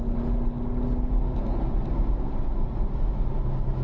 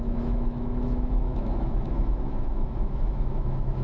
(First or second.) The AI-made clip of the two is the second